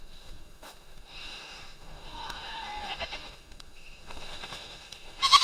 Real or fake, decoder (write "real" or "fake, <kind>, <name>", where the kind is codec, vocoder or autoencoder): fake, autoencoder, DAC-VAE